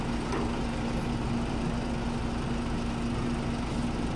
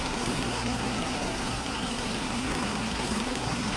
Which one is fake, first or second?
second